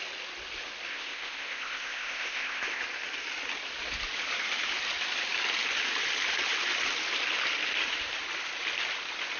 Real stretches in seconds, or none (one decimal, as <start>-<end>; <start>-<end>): 0.0-0.9; 2.8-9.4